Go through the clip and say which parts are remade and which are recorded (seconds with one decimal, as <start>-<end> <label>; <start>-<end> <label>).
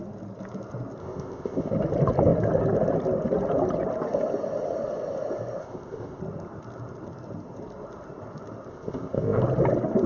0.0-1.0 recorded; 1.0-1.7 remade; 1.7-5.6 recorded; 5.6-6.2 remade; 6.2-8.7 recorded; 8.7-9.4 remade; 9.4-10.1 recorded